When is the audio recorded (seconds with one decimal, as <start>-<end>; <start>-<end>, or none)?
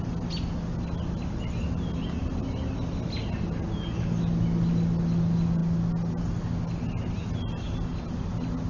0.0-8.7